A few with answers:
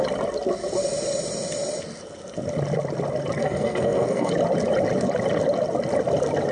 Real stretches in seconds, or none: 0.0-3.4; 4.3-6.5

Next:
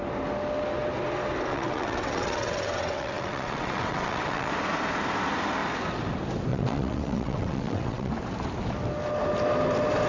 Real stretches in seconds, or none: 0.0-1.5; 4.5-6.5; 8.1-10.1

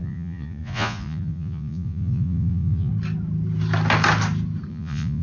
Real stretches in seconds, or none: 2.9-4.7

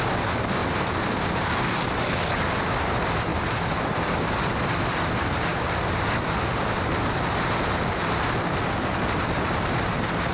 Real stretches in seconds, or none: 0.0-0.6; 1.5-3.3; 4.5-5.5; 6.0-10.3

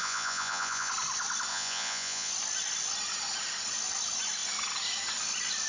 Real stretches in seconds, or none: 0.9-1.5; 2.3-5.7

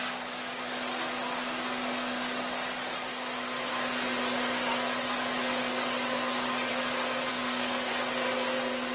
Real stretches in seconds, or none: 0.0-7.3; 7.9-8.9

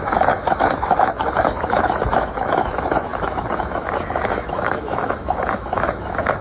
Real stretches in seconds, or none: none

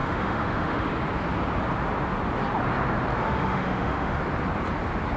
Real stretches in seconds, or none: 0.9-3.2; 4.2-5.2